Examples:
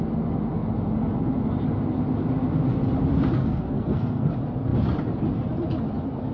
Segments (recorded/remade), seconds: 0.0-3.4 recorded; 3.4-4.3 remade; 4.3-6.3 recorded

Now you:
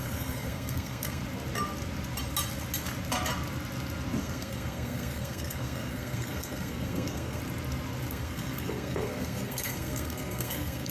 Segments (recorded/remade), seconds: 0.0-1.2 remade; 1.2-4.2 recorded; 4.2-7.4 remade; 7.4-8.1 recorded; 8.1-10.9 remade

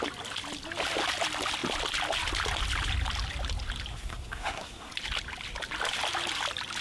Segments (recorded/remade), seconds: 0.0-3.9 recorded; 3.9-4.9 remade; 4.9-6.8 recorded

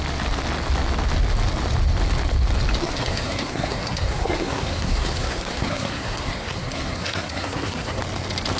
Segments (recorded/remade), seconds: 0.0-2.8 recorded; 2.8-8.0 remade; 8.0-8.6 recorded

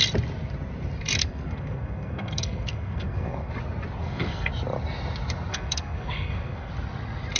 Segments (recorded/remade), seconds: 0.0-1.2 recorded; 1.2-3.5 remade; 3.5-4.0 recorded; 4.0-4.5 remade; 4.5-5.5 recorded; 5.5-6.7 remade; 6.7-7.4 recorded

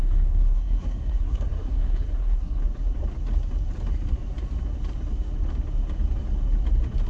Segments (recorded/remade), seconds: 0.0-2.6 remade; 2.6-7.1 recorded

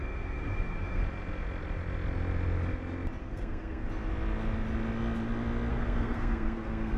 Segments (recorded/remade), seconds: 0.0-1.0 remade; 1.0-3.2 recorded; 3.2-3.8 remade; 3.8-5.7 recorded; 5.7-7.0 remade

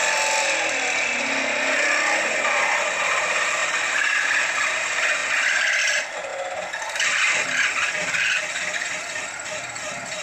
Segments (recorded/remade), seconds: 0.0-10.2 recorded